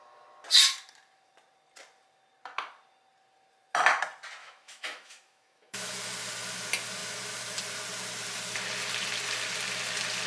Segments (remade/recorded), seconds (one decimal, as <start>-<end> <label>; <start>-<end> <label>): 0.0-4.4 recorded; 4.4-5.9 remade; 5.9-10.3 recorded